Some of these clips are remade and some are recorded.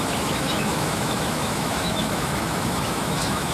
remade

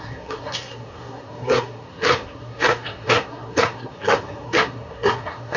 remade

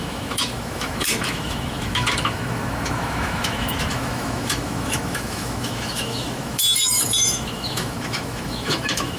remade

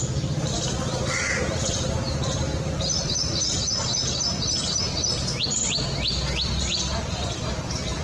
recorded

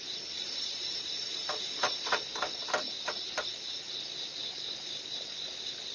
recorded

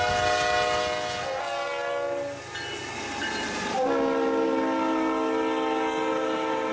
recorded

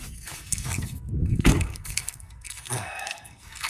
remade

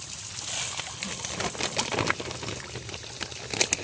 recorded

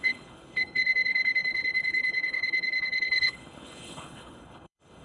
remade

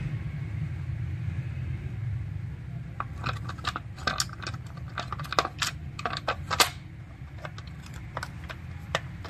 recorded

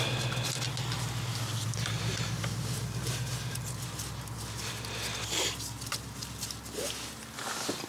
recorded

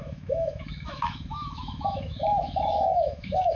remade